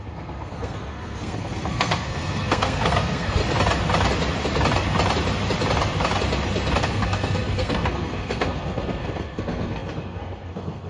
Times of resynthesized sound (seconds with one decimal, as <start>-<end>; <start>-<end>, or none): 0.0-3.4; 6.8-10.9